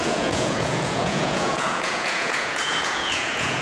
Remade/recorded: remade